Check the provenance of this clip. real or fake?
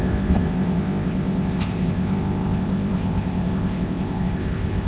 fake